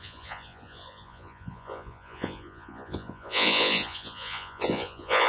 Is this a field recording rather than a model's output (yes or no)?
no